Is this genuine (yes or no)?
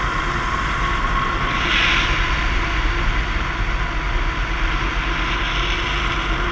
yes